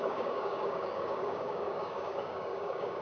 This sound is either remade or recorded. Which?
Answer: remade